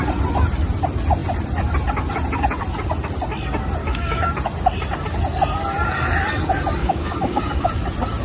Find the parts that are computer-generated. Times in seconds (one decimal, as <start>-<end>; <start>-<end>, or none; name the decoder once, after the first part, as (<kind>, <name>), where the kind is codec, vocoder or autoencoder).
3.8-4.3 (codec, DAC); 6.8-7.7